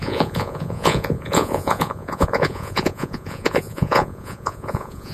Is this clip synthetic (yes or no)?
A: yes